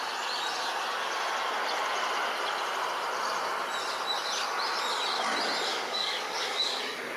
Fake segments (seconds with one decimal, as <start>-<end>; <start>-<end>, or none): 5.7-6.8